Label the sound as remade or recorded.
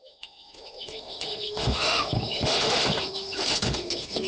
remade